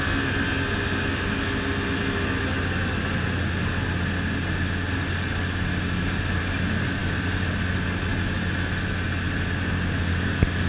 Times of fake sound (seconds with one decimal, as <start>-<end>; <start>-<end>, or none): none